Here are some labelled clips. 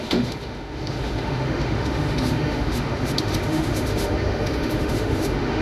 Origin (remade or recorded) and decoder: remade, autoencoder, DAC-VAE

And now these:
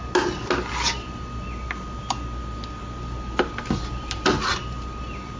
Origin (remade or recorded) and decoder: recorded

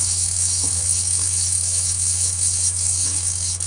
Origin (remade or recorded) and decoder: remade, autoencoder, DAC-VAE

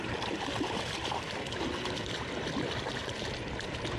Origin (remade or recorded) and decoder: recorded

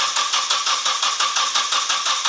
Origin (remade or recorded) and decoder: recorded